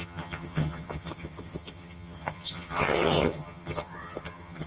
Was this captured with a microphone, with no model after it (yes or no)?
no